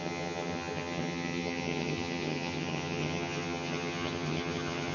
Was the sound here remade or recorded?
remade